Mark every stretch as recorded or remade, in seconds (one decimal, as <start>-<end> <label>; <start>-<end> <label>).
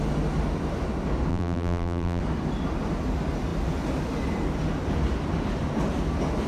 0.0-1.3 recorded; 1.3-2.2 remade; 2.2-6.5 recorded